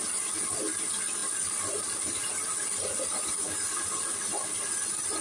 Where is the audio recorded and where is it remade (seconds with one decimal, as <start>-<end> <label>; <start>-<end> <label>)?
0.0-5.2 recorded